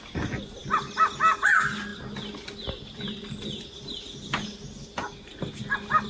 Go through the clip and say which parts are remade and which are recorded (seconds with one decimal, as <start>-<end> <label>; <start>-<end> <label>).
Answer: 0.0-6.1 recorded